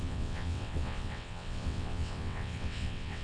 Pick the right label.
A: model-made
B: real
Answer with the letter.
A